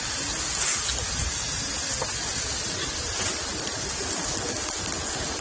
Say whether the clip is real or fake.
real